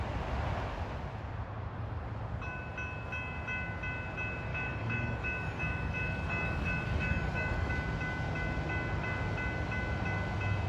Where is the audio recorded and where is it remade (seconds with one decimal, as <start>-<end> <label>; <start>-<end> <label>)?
0.0-4.5 recorded; 4.5-7.7 remade; 7.7-10.7 recorded